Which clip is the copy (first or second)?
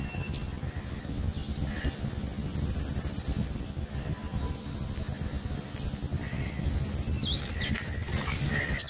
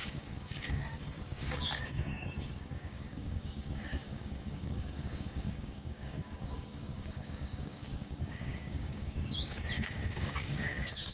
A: second